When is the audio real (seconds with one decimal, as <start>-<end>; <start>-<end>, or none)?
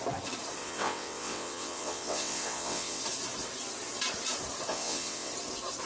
0.0-0.6; 3.0-4.7; 5.3-5.9